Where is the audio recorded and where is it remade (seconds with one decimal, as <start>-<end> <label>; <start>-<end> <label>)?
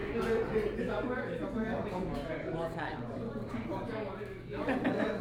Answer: 0.0-0.8 recorded; 0.8-5.2 remade